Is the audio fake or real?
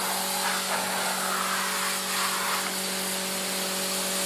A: real